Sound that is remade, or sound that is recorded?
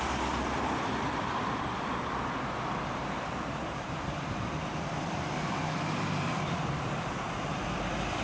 remade